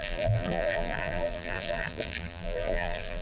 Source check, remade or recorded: remade